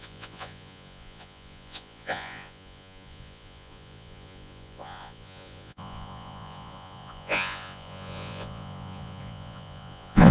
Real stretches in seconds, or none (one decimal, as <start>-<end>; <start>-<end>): none